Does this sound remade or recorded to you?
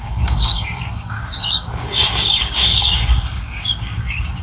remade